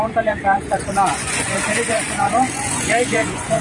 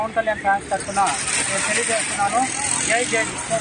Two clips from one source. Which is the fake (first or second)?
first